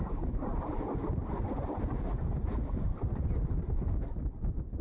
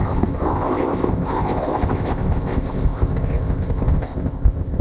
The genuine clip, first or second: first